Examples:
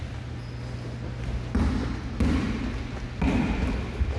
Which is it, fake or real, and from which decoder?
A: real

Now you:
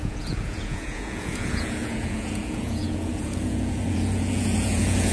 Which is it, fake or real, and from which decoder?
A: fake, vocoder, Vocos